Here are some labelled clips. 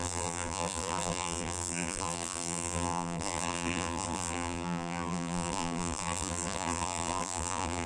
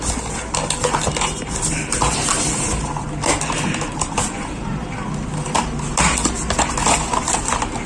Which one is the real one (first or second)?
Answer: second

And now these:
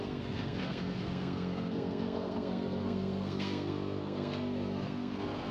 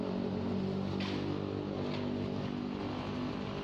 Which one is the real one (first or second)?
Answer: second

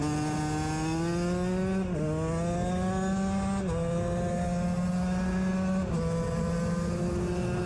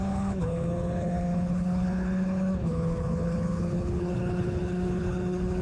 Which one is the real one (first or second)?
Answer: first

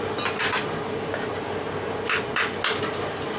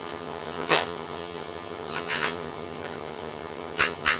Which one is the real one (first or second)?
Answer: first